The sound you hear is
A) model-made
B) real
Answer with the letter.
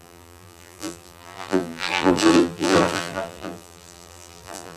A